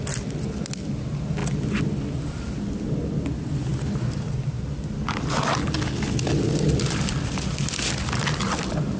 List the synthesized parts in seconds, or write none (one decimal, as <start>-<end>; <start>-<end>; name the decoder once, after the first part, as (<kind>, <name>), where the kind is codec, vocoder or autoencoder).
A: none